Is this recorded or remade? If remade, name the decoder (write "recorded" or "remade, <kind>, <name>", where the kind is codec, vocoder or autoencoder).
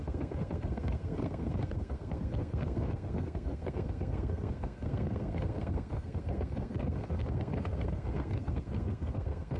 remade, codec, SNAC